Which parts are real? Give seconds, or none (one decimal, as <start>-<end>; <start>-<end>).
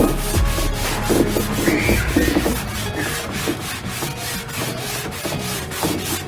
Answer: 0.0-6.3